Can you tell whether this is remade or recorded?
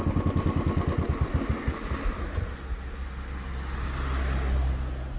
recorded